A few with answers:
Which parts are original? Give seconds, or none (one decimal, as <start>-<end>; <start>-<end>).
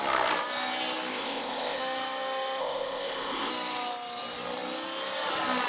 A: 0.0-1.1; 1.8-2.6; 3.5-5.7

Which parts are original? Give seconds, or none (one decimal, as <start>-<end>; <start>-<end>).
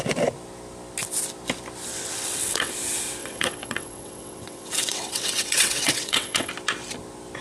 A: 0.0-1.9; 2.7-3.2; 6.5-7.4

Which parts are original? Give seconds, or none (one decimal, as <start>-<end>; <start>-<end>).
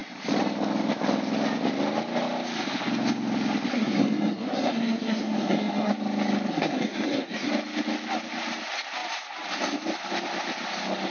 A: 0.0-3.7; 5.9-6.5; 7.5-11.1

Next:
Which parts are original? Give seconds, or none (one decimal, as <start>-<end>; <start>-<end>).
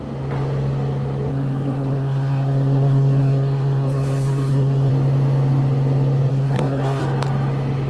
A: 0.0-1.3; 4.9-6.3; 7.0-7.9